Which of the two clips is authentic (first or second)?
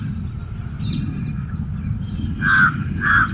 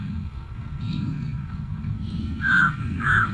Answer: first